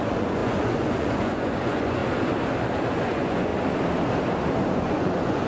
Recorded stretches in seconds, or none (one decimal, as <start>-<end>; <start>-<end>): 2.0-2.9; 3.5-4.7